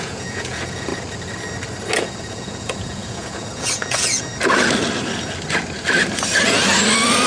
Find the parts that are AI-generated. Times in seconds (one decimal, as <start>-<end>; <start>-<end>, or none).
0.0-0.9; 2.0-4.3